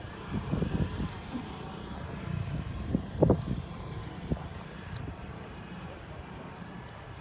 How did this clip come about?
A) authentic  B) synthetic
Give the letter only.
B